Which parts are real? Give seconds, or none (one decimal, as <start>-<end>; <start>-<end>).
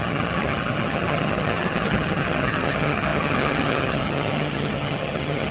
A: none